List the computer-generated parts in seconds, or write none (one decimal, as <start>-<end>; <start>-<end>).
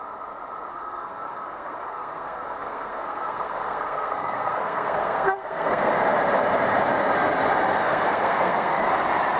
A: 0.7-5.9; 7.8-8.9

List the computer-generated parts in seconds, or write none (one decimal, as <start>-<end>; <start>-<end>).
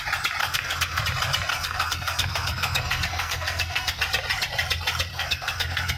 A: 0.4-1.0; 1.5-4.0; 5.1-6.0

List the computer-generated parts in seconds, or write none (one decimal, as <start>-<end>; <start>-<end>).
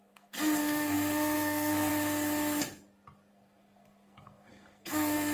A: 0.0-1.9; 3.3-5.3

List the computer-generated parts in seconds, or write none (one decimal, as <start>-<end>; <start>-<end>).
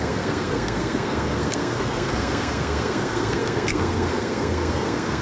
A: 0.0-5.2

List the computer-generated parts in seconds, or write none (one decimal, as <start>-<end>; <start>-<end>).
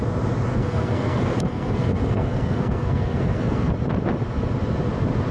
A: 0.5-3.7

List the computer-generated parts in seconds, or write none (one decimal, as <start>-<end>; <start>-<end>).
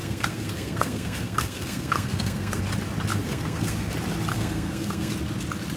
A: 0.0-2.6; 3.1-3.9; 4.3-5.1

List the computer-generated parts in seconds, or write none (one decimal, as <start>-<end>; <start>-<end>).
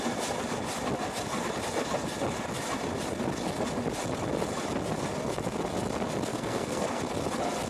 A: 6.3-7.0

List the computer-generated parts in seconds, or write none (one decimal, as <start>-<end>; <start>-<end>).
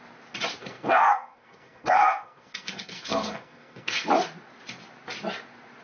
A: 0.6-4.1